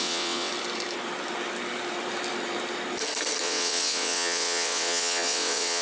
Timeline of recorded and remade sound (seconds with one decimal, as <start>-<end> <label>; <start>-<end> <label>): 0.0-0.5 remade; 0.5-3.4 recorded; 3.4-5.8 remade